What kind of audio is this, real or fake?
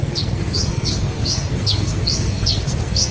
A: fake